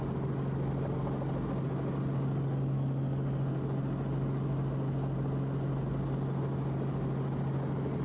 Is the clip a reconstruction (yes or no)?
no